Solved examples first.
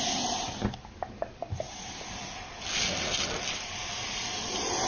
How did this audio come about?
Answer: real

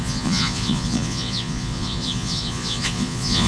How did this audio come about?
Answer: fake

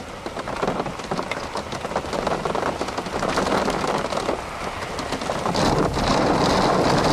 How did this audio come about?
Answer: real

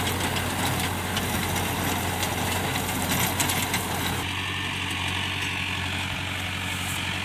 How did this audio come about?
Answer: real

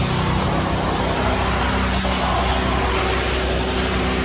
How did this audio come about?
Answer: real